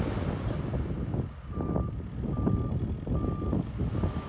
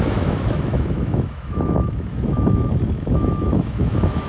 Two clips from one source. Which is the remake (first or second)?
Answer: second